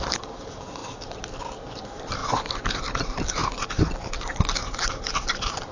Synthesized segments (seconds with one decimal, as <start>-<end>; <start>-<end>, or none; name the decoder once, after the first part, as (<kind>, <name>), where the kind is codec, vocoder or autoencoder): 0.0-2.2 (vocoder, BigVGAN v2); 3.0-3.4; 5.3-5.7